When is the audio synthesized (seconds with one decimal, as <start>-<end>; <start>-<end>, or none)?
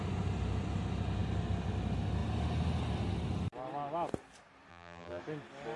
4.7-5.2